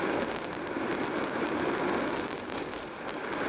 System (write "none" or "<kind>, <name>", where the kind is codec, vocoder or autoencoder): vocoder, BigVGAN v2